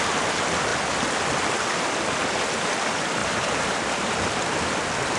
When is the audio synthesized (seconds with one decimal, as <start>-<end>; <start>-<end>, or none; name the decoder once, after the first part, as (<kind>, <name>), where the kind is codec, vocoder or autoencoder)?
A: 3.2-3.7 (vocoder, BigVGAN v2)